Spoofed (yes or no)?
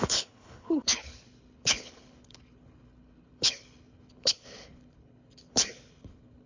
yes